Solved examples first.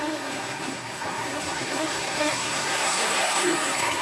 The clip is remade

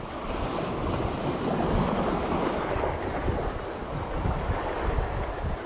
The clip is recorded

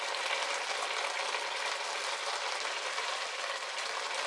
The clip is recorded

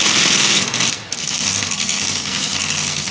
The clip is remade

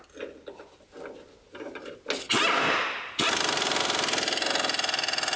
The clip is recorded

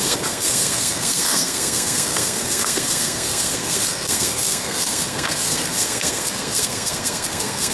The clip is remade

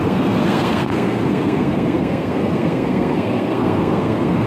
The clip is remade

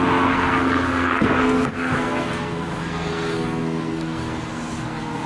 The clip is remade